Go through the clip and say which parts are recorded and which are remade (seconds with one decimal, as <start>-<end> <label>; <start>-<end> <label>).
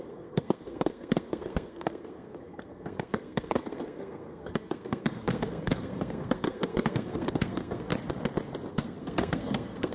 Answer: 0.0-7.9 remade; 7.9-8.7 recorded; 8.7-9.9 remade